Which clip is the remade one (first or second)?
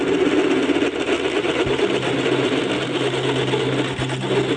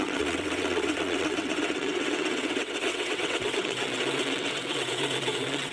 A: second